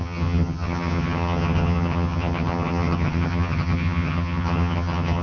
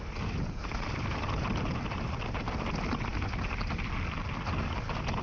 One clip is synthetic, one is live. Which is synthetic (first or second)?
first